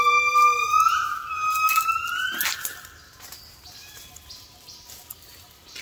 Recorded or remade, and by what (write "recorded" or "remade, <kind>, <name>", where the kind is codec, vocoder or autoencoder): recorded